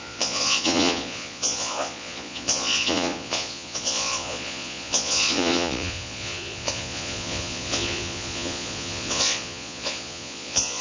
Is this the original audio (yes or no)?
no